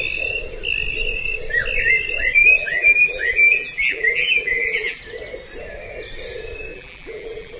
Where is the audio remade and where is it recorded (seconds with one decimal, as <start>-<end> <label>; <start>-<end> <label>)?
0.0-2.6 recorded; 2.6-5.0 remade; 5.0-6.7 recorded; 6.7-7.6 remade